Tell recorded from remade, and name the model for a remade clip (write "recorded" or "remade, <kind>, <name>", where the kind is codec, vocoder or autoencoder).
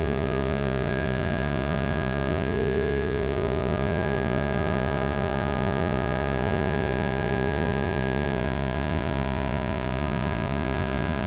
remade, vocoder, Vocos